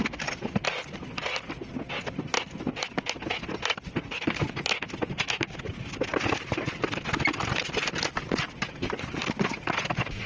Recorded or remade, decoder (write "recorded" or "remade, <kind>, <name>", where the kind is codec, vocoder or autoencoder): recorded